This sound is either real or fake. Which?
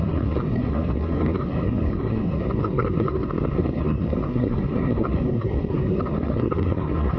fake